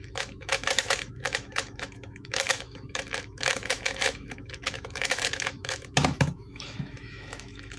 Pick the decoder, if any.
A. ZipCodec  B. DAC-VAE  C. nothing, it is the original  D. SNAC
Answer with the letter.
B